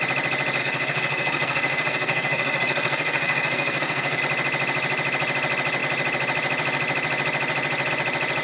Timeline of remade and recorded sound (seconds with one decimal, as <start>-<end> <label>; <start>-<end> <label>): 0.0-0.6 recorded; 0.6-4.2 remade; 4.2-8.4 recorded